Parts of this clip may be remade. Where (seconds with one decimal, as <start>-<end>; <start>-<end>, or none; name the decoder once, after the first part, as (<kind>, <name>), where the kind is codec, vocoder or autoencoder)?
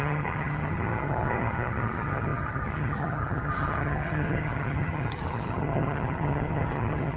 0.0-7.2 (vocoder, HiFi-GAN)